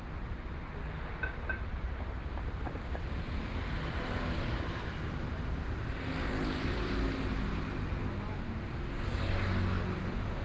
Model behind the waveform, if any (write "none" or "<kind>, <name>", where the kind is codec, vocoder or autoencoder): none